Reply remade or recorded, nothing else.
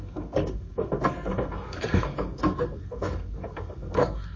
remade